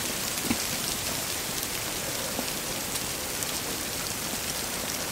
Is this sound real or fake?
fake